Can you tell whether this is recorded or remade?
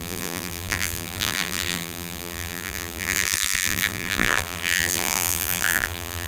remade